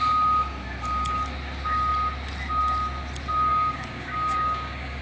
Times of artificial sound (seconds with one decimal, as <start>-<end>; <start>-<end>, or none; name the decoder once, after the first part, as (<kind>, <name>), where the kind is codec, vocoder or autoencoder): 3.5-5.0 (codec, DAC)